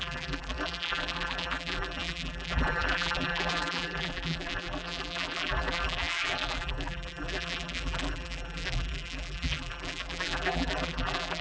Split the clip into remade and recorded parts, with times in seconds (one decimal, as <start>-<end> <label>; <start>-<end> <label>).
0.0-11.4 remade